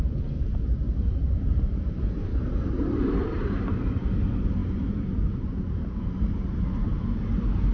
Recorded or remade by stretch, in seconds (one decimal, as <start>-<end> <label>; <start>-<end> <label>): 0.0-7.7 recorded